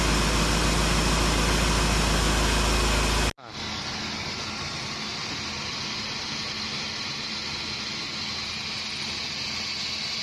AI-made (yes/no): no